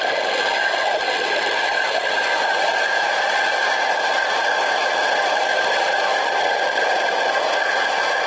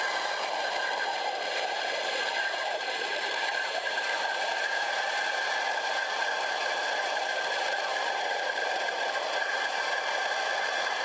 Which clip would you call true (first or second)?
first